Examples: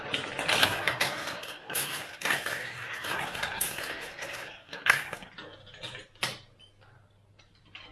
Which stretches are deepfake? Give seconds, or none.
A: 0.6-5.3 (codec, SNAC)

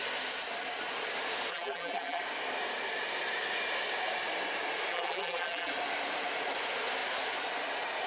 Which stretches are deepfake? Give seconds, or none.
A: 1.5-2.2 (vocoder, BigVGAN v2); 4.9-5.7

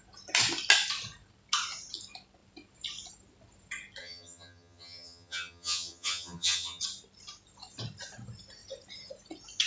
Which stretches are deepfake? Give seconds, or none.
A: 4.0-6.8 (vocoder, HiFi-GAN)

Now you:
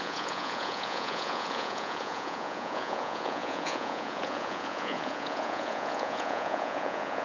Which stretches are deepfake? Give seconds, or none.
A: 0.0-7.2 (vocoder, Vocos)